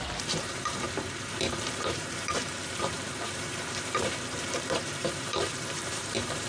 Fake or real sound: fake